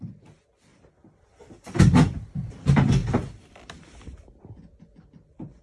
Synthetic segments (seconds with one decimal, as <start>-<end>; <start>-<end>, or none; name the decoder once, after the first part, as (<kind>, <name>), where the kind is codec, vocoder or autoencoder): 0.7-2.5 (vocoder, BigVGAN v2)